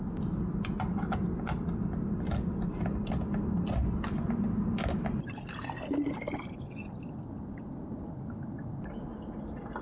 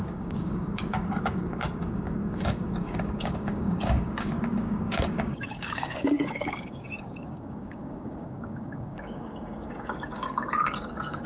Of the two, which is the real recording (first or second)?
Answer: first